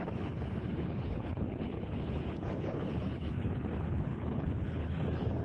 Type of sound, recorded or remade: remade